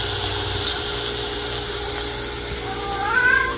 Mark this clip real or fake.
real